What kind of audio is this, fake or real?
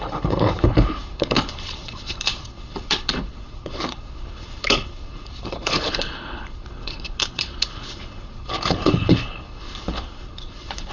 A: fake